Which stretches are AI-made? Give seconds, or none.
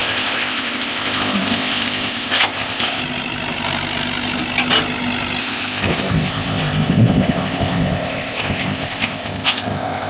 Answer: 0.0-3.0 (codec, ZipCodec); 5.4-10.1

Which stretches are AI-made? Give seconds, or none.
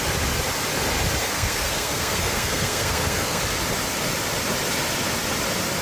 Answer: 1.2-3.4 (codec, SNAC)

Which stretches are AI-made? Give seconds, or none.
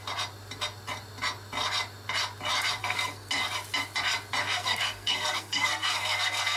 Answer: 2.8-3.3 (codec, SNAC); 4.4-6.6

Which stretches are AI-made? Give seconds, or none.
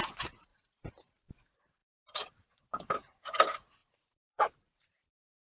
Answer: 0.5-1.3 (vocoder, BigVGAN v2); 3.8-5.5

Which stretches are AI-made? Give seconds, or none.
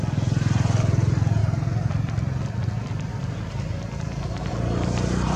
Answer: none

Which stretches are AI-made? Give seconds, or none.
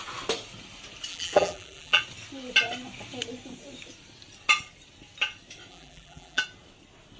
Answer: 1.1-2.0 (vocoder, BigVGAN v2); 5.7-6.4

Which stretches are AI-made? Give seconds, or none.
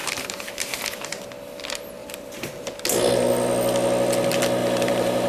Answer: 0.0-0.8 (vocoder, BigVGAN v2); 2.0-2.5; 4.6-5.3